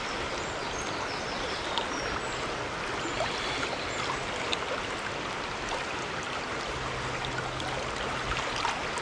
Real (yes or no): yes